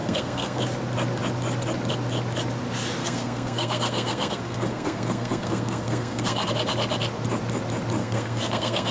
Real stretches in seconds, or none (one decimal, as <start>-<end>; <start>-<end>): 0.6-3.0; 6.5-8.0